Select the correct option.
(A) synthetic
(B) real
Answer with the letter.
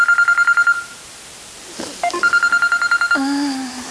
B